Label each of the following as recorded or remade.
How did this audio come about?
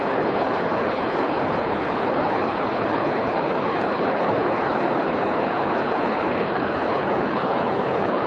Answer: remade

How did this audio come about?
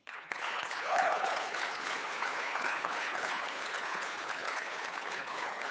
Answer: remade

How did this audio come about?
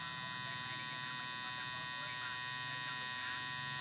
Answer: recorded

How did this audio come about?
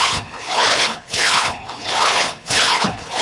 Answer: remade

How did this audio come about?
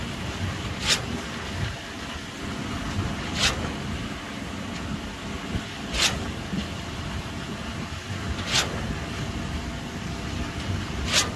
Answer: recorded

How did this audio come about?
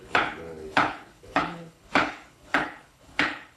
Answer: remade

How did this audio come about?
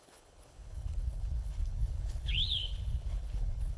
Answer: remade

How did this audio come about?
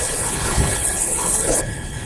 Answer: remade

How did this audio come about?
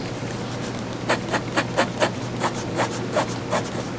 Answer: recorded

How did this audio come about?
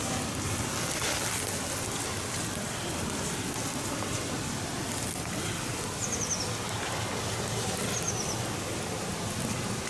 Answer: recorded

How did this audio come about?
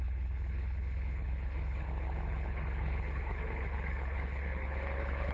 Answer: remade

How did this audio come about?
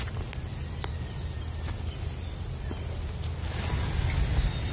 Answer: recorded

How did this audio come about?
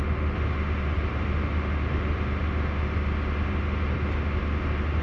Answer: recorded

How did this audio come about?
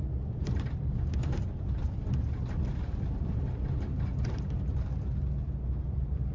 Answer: recorded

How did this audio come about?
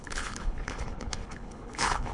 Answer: remade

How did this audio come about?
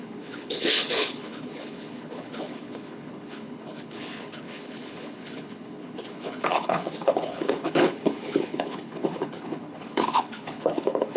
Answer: remade